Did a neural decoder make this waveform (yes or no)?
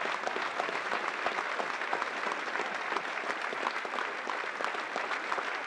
no